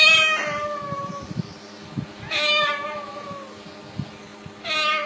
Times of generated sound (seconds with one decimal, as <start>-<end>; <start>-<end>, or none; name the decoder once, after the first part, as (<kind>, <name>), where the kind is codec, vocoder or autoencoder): none